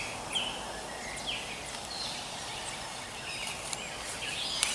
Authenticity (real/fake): real